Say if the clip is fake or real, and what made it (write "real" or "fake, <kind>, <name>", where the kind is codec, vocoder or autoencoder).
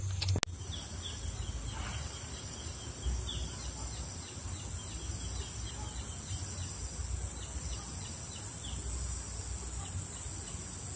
real